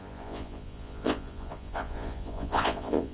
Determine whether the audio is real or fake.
fake